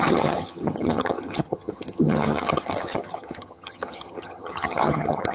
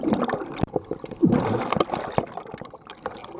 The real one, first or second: second